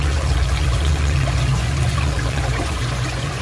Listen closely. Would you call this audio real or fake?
fake